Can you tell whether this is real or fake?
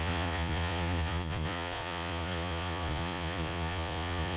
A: fake